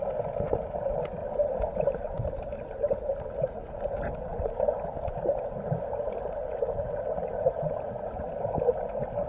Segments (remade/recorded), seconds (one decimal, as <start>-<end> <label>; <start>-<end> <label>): 0.0-9.3 recorded

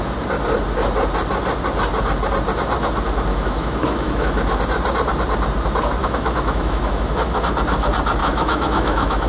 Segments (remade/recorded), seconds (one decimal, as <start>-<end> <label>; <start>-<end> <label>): 0.0-3.3 recorded; 3.3-4.6 remade; 4.6-6.0 recorded; 6.0-7.4 remade; 7.4-8.2 recorded; 8.2-9.3 remade